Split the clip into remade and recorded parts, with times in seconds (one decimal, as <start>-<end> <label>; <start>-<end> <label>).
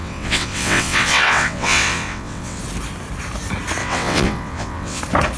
0.0-2.6 remade; 2.6-3.8 recorded; 3.8-5.0 remade; 5.0-5.4 recorded